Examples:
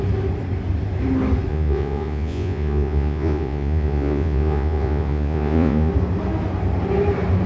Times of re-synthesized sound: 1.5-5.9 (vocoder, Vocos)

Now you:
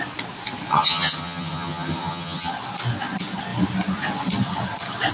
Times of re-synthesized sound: 0.7-2.5 (vocoder, HiFi-GAN)

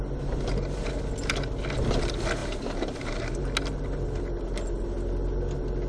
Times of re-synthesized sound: none

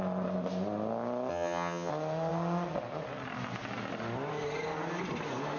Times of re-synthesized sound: 1.3-1.9 (vocoder, HiFi-GAN)

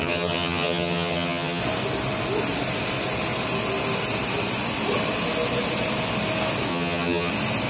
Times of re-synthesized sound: 0.0-1.6 (vocoder, HiFi-GAN); 6.7-7.3

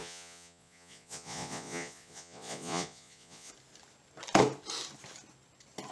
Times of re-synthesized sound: 0.0-3.5 (vocoder, Vocos)

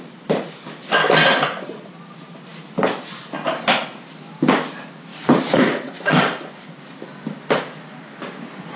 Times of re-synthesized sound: 5.1-6.7 (vocoder, BigVGAN v2)